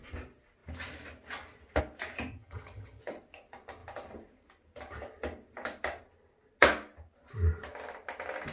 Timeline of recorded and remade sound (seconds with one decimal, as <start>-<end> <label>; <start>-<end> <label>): 0.0-2.3 recorded; 2.3-3.0 remade; 3.0-8.5 recorded